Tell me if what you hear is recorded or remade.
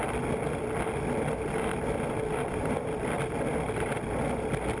recorded